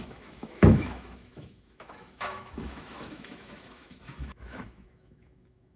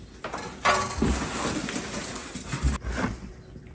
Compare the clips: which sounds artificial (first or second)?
first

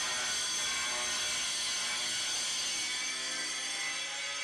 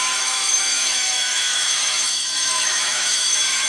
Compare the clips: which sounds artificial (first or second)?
second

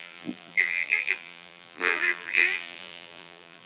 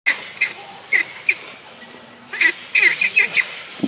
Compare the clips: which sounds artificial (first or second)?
first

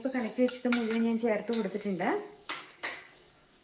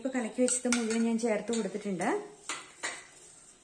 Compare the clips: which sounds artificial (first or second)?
first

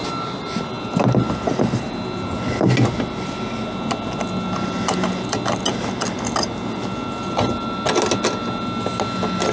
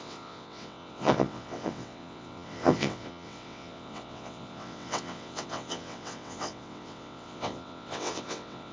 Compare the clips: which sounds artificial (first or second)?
second